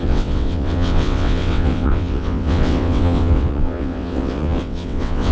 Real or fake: fake